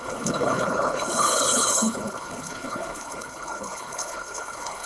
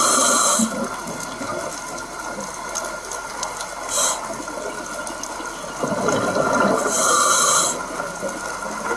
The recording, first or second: second